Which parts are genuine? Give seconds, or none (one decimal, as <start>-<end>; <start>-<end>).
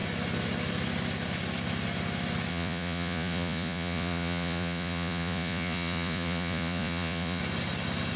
0.0-2.5; 7.4-8.2